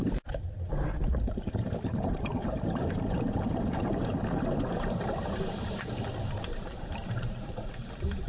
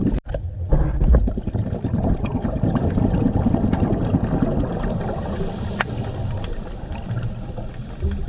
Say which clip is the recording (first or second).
second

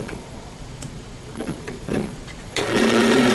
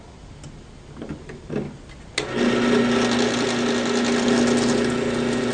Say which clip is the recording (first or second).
second